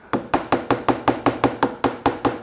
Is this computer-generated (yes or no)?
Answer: no